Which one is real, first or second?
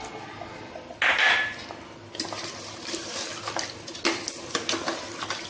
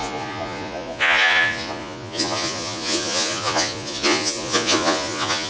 first